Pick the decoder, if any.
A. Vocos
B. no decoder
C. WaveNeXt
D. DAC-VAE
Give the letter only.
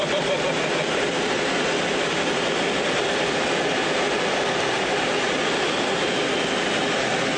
B